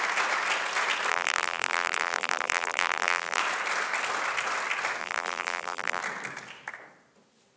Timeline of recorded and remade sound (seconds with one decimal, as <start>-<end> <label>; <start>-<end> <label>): 0.0-1.1 recorded; 1.1-3.4 remade; 3.4-5.0 recorded; 5.0-6.0 remade; 6.0-7.6 recorded